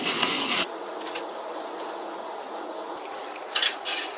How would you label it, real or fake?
fake